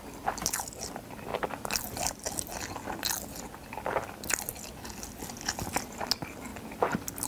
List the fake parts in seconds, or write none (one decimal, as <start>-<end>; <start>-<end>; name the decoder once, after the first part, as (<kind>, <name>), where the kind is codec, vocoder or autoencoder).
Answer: none